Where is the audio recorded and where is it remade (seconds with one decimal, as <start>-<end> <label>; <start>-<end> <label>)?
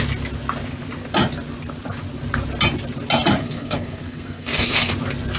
0.0-3.4 recorded; 3.4-4.9 remade; 4.9-5.4 recorded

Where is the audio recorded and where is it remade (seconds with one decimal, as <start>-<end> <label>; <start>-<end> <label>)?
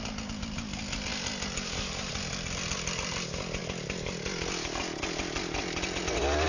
0.0-6.5 recorded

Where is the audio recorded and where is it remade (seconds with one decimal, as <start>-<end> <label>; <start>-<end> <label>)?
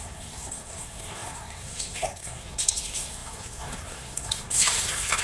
0.0-5.2 remade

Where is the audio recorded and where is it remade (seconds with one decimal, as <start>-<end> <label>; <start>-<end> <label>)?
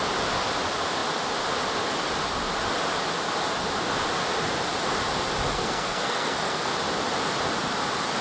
0.0-5.5 recorded; 5.5-6.7 remade; 6.7-8.2 recorded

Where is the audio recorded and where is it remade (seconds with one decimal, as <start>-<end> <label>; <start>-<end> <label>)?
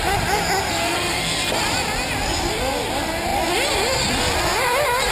0.0-0.7 recorded; 0.7-1.5 remade; 1.5-5.1 recorded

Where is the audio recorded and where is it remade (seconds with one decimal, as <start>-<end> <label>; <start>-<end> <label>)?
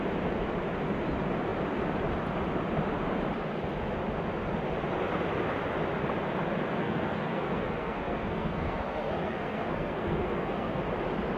0.0-6.8 recorded; 6.8-10.8 remade; 10.8-11.4 recorded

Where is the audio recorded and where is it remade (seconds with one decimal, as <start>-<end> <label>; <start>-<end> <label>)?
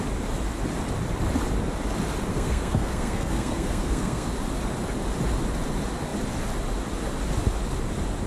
0.0-2.3 recorded; 2.3-4.3 remade; 4.3-8.3 recorded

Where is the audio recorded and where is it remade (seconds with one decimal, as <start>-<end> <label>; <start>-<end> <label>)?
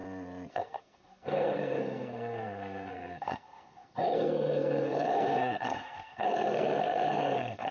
0.0-0.5 recorded; 0.5-7.7 remade